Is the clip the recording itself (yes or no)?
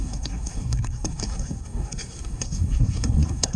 no